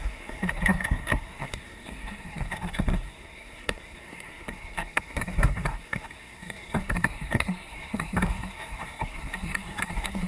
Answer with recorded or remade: remade